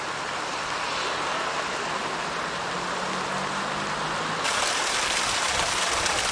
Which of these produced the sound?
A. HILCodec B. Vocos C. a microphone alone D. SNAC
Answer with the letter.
C